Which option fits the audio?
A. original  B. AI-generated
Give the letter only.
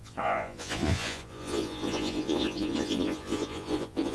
B